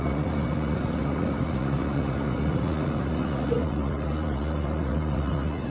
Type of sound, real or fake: fake